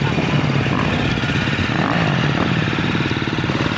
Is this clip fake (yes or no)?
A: no